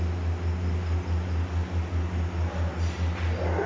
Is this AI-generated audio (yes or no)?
no